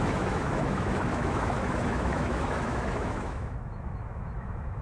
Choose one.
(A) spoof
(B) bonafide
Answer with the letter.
A